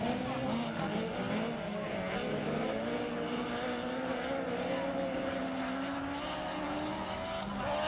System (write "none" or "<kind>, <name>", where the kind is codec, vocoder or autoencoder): none